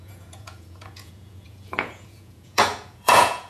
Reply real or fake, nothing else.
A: fake